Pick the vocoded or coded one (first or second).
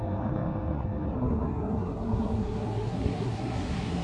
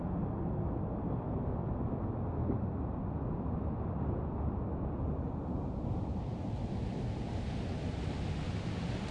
first